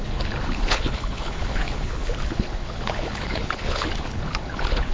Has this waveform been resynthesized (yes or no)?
yes